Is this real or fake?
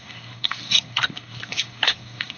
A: fake